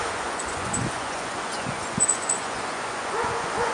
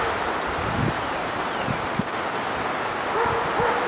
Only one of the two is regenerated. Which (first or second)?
first